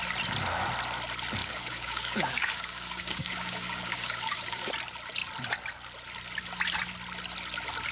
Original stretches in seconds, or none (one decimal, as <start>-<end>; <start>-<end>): 0.0-1.4; 4.7-7.9